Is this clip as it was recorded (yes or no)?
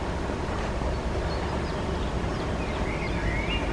yes